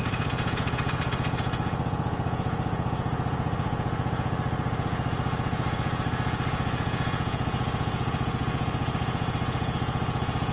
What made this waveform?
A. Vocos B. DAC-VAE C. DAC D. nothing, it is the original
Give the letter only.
A